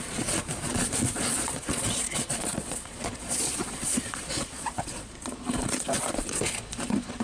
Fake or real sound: fake